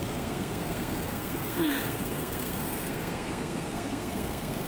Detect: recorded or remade remade